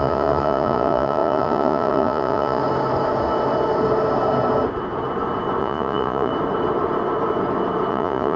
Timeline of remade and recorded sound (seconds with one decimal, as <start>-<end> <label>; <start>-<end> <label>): 0.0-2.6 remade; 2.6-5.6 recorded; 5.6-6.3 remade; 6.3-7.9 recorded; 7.9-8.4 remade

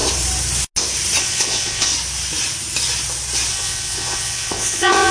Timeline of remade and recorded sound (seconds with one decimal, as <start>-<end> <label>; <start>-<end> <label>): 0.0-1.2 recorded; 1.2-1.9 remade; 1.9-3.5 recorded; 3.5-5.1 remade